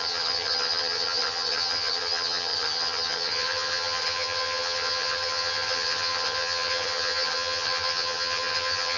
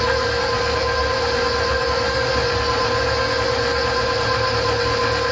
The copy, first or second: first